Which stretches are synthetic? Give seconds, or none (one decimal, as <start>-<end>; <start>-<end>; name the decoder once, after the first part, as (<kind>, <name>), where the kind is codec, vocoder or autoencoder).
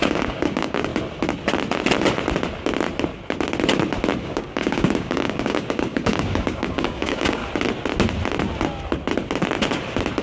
0.0-0.9 (codec, DAC); 4.2-7.4